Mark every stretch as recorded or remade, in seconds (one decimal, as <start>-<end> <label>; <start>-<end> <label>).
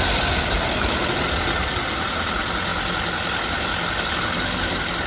0.0-5.1 recorded